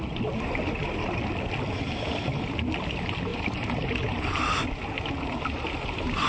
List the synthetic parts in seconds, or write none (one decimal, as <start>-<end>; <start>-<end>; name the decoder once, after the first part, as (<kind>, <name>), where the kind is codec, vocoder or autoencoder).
3.3-3.9 (vocoder, BigVGAN v2)